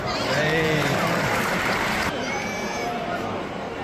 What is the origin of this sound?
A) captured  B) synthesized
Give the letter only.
B